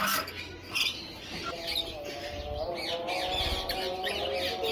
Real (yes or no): yes